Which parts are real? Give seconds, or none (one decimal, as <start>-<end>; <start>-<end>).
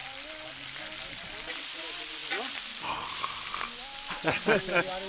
0.0-5.1